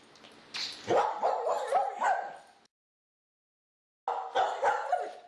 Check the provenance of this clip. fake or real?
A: real